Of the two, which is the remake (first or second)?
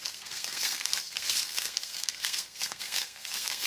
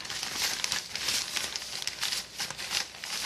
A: first